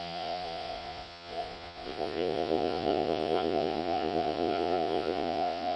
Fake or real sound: fake